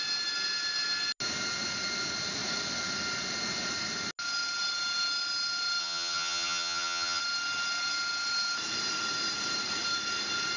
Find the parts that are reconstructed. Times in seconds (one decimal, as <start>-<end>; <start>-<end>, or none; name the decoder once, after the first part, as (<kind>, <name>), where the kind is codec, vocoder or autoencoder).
5.8-7.2 (vocoder, HiFi-GAN)